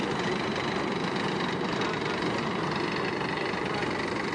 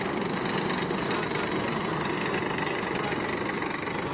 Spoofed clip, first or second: first